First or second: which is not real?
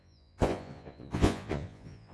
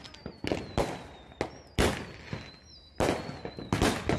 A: first